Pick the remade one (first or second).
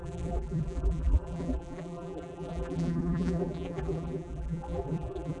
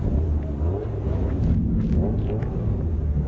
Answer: first